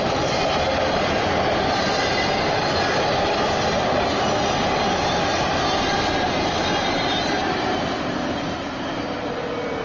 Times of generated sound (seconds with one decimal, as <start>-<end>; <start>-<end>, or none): none